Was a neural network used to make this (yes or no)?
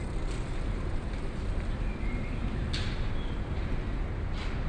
no